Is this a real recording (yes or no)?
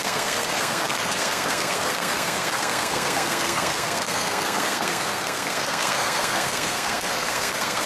no